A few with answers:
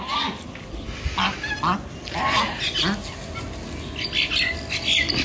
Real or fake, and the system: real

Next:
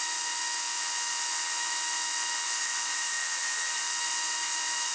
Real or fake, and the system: fake, vocoder, WaveNeXt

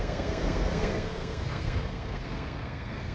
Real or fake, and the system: fake, codec, SNAC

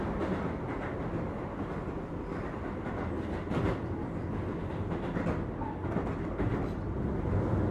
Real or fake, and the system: real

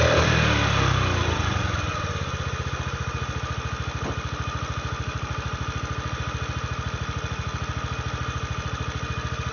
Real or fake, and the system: real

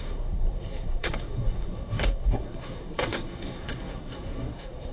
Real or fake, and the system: fake, codec, SNAC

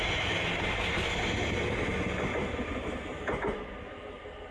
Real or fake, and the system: real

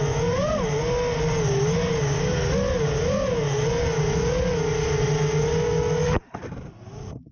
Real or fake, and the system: real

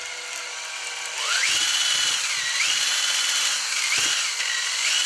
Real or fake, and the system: real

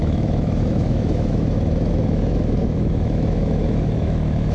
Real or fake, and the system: fake, autoencoder, DAC-VAE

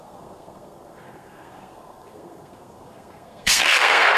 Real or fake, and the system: fake, codec, SNAC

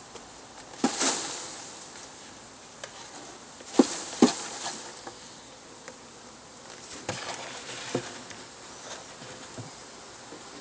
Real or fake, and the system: real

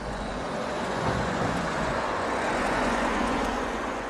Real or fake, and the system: fake, vocoder, Vocos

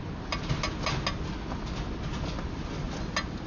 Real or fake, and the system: real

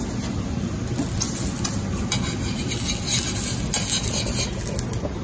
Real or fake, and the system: real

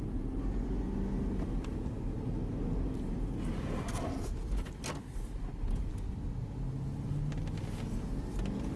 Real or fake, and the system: real